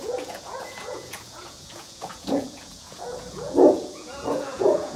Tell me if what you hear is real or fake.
fake